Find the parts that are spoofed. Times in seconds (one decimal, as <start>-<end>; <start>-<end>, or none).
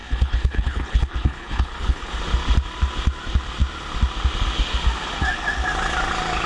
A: 0.0-2.2